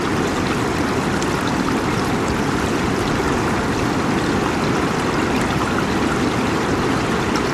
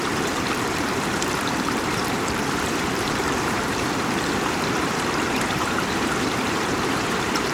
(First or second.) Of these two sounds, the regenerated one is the second